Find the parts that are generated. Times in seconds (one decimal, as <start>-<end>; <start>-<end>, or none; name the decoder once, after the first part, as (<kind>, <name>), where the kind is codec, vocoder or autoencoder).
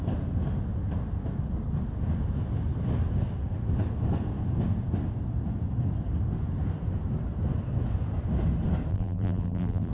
8.9-9.9 (vocoder, BigVGAN v2)